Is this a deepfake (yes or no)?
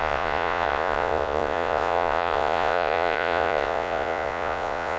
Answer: yes